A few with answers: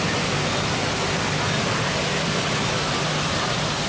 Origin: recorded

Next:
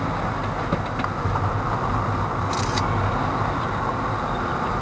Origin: recorded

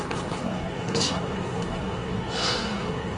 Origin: remade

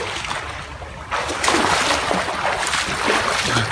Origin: recorded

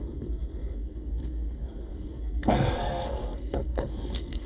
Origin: remade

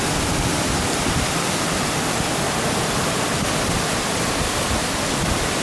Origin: recorded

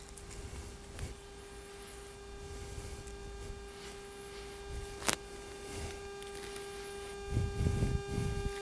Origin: recorded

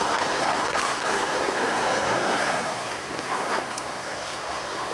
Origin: remade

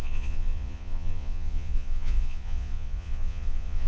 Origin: remade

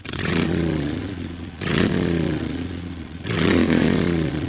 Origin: remade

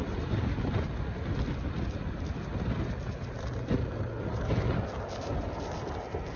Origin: recorded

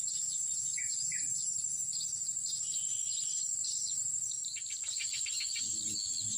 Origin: recorded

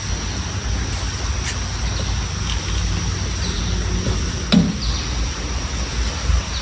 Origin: recorded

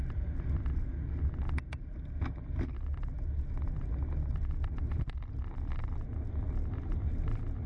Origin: recorded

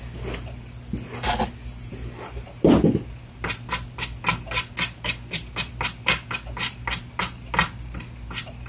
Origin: recorded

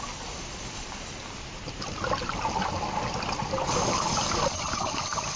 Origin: recorded